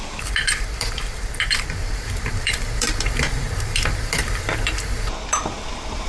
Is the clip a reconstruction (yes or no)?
yes